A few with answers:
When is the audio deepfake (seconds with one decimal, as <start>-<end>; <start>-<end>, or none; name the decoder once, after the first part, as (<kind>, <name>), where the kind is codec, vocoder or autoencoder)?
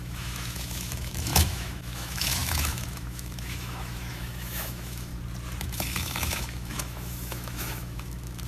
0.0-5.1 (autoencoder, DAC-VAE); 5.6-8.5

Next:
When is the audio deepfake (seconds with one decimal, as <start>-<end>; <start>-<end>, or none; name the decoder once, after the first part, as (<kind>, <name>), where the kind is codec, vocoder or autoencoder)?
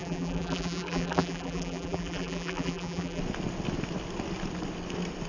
0.0-3.2 (vocoder, BigVGAN v2)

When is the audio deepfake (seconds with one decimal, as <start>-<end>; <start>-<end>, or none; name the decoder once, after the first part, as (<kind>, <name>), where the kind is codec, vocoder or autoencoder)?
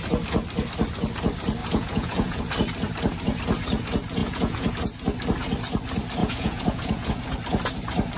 1.6-2.4 (vocoder, Vocos); 4.2-4.7; 6.2-7.1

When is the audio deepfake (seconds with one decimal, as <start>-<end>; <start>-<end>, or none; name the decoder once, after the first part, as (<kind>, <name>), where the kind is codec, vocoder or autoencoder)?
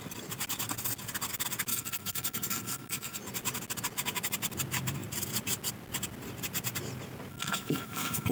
1.7-3.2 (codec, SNAC); 7.3-8.3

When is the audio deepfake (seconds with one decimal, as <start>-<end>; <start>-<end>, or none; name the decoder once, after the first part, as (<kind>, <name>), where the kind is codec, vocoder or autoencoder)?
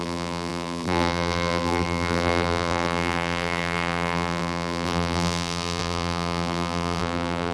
0.0-7.5 (vocoder, BigVGAN v2)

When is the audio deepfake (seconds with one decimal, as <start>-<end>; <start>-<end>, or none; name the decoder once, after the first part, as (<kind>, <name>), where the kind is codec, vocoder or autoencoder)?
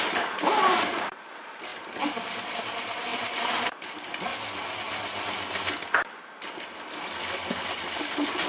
0.0-1.7 (vocoder, BigVGAN v2); 2.6-4.3; 7.7-8.5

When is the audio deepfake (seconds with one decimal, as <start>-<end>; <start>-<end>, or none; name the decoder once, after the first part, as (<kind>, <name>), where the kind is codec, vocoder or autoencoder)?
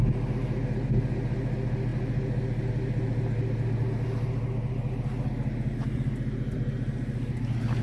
none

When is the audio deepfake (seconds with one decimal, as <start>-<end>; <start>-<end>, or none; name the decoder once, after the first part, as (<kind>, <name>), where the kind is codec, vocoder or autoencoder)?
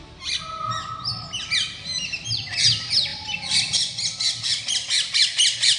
none